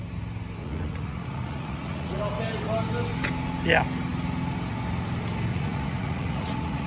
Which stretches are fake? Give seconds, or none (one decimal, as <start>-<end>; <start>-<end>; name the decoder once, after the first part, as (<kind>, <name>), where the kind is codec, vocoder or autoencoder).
0.6-2.2 (vocoder, Vocos); 5.5-6.9